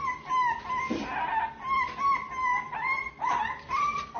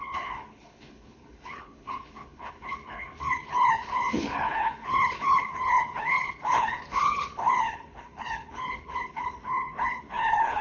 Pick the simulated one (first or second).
second